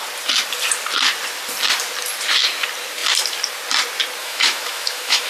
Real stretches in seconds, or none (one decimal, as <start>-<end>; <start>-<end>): 0.0-4.2